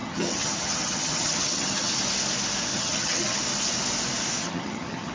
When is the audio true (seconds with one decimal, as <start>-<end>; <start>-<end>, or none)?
1.9-2.7; 3.4-4.4